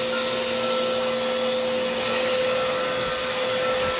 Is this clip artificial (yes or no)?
no